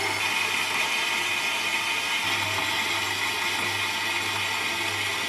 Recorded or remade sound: recorded